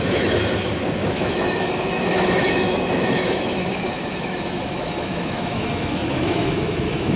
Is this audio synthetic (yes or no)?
yes